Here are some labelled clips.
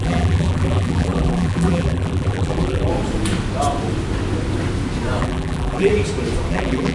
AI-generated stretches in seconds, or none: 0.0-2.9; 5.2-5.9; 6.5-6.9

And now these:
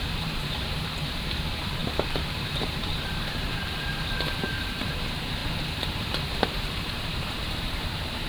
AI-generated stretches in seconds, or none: 0.0-8.3

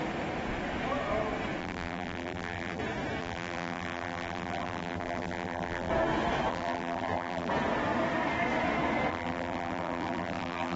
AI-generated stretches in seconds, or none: 1.6-2.8; 3.2-5.9; 6.5-7.5; 9.1-10.8

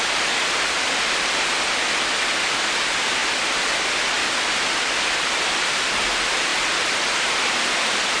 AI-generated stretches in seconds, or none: 6.5-8.2